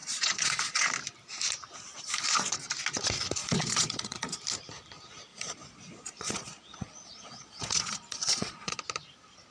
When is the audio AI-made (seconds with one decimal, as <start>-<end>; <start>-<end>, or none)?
0.0-0.9; 3.4-4.4; 5.3-8.8